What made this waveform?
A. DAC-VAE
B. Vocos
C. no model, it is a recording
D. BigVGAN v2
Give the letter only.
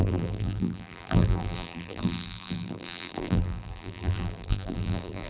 D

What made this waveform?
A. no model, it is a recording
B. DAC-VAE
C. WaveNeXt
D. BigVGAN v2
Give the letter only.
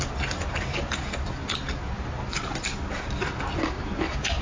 A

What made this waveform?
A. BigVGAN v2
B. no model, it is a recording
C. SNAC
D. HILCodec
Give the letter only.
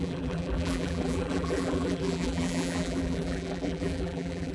A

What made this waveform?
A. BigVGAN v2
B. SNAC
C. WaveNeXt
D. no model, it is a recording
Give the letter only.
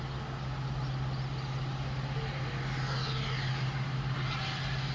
D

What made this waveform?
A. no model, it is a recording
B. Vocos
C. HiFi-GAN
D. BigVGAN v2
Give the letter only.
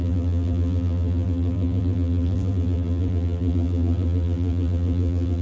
D